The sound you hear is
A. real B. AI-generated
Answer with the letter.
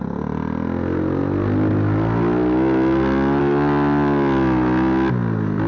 A